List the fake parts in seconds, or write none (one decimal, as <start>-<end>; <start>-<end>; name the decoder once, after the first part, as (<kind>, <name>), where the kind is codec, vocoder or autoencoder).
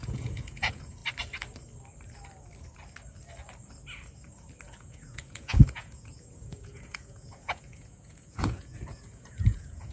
0.0-1.0 (vocoder, Vocos); 4.7-9.9